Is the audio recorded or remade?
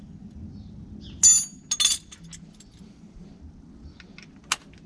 recorded